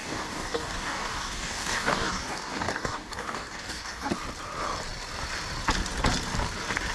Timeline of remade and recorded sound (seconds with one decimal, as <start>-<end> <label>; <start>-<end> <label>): 0.0-4.1 remade; 4.1-6.9 recorded